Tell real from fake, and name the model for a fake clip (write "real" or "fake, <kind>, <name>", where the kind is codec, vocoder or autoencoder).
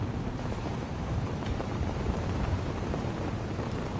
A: fake, vocoder, BigVGAN v2